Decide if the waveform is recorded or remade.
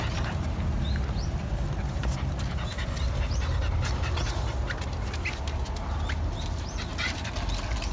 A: recorded